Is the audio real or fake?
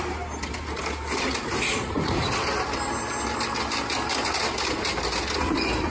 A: real